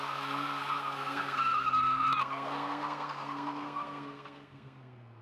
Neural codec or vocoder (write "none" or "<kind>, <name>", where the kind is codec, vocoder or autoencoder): codec, SNAC